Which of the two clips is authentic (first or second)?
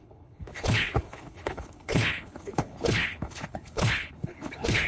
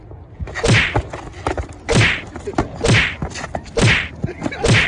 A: second